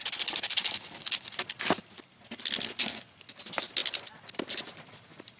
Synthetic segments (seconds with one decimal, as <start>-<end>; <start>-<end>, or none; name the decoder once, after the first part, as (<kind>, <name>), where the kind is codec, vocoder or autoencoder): none